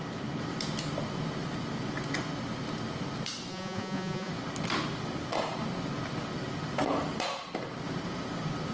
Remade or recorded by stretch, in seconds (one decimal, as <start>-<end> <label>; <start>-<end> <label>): 0.0-3.5 recorded; 3.5-4.3 remade; 4.3-8.7 recorded